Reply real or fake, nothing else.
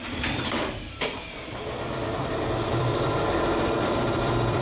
fake